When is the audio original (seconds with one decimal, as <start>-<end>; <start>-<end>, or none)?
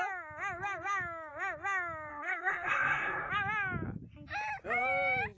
0.0-2.1; 3.3-5.4